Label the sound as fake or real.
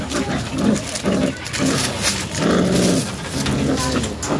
real